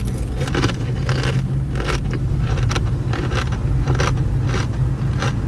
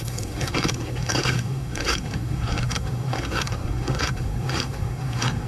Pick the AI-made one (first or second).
second